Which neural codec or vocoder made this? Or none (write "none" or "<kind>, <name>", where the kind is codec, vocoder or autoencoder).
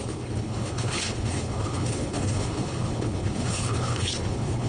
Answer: codec, HILCodec